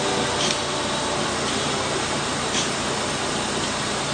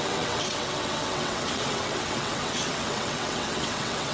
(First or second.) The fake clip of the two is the second